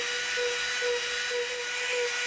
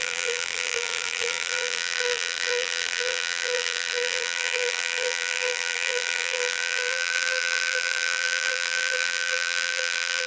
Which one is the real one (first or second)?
first